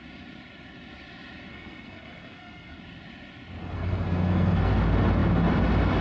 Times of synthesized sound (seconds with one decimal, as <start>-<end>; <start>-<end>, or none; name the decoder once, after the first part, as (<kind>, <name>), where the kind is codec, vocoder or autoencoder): 1.5-2.8 (codec, SNAC); 3.6-4.7